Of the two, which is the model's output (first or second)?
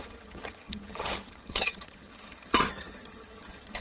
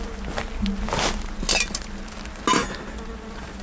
first